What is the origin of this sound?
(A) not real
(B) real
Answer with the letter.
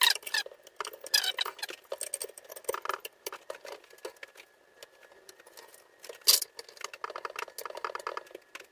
B